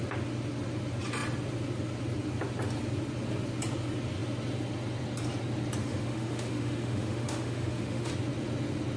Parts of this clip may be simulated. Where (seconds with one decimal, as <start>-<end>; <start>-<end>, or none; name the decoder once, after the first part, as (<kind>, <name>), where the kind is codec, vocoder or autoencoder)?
5.8-8.1 (autoencoder, DAC-VAE)

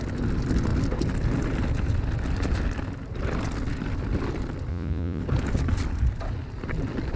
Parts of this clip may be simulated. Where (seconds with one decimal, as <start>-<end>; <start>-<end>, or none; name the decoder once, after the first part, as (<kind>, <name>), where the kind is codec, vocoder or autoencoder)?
4.7-5.2 (vocoder, Vocos)

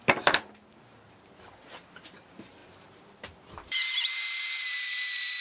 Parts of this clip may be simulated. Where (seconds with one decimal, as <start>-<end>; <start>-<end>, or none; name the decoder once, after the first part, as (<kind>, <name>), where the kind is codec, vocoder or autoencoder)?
0.0-5.4 (vocoder, BigVGAN v2)

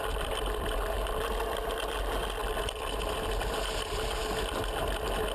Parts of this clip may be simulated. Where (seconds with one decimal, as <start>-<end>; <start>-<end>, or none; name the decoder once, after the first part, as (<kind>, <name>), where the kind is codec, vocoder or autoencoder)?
none

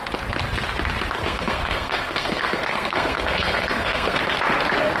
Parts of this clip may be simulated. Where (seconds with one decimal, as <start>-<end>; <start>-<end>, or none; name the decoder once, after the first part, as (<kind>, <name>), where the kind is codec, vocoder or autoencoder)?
1.2-4.2 (codec, SNAC)

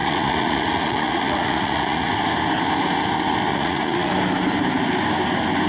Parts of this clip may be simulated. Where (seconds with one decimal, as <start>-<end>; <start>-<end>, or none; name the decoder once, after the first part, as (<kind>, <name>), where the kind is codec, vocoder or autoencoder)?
0.0-2.1 (vocoder, Vocos); 3.5-4.1

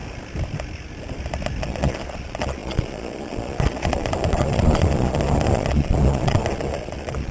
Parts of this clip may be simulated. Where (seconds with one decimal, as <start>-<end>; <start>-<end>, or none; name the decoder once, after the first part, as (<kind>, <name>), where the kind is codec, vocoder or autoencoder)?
1.6-7.3 (vocoder, Vocos)

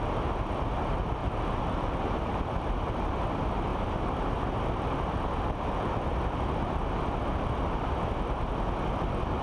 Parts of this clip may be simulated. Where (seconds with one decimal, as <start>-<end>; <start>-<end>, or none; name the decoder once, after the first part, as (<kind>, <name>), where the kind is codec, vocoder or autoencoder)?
1.2-2.4 (vocoder, BigVGAN v2); 3.7-4.8